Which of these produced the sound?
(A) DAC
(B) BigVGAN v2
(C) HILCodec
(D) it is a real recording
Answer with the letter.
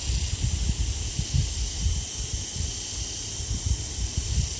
D